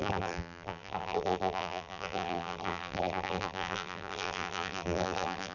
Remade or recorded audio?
remade